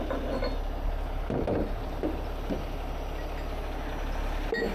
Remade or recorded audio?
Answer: recorded